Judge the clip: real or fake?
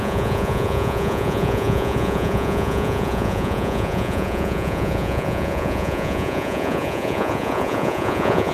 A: fake